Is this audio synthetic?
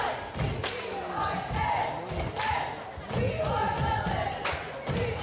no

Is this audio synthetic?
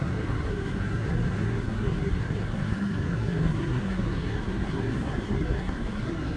yes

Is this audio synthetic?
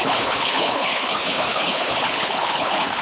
yes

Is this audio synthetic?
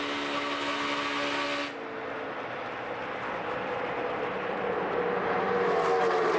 no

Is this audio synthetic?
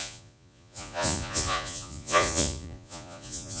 yes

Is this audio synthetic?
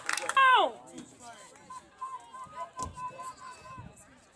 no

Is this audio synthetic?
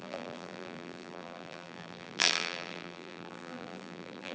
yes